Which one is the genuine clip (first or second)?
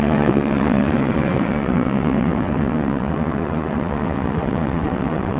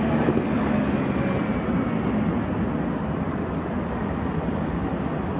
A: second